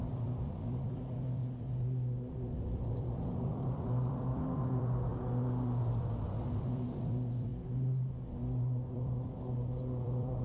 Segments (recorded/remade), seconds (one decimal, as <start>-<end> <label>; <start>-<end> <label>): 0.0-1.4 remade; 1.4-3.0 recorded; 3.0-5.1 remade; 5.1-5.9 recorded; 5.9-7.5 remade; 7.5-8.9 recorded; 8.9-10.4 remade